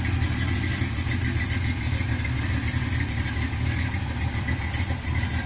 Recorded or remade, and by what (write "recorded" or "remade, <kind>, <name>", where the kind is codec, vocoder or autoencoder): recorded